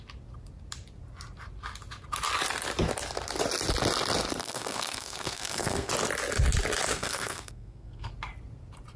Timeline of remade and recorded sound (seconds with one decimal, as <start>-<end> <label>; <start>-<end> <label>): 0.0-4.4 recorded; 4.4-5.9 remade; 5.9-6.9 recorded; 6.9-8.1 remade; 8.1-9.0 recorded